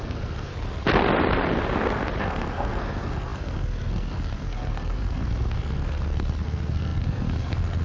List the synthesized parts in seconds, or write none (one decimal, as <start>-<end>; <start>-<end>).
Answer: 0.0-0.5; 2.2-7.8